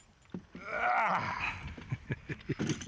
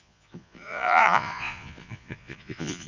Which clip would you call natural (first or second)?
first